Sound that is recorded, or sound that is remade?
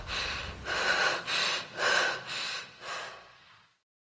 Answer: recorded